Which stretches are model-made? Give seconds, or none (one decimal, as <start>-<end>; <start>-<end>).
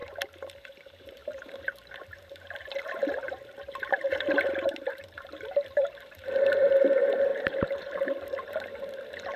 0.0-9.4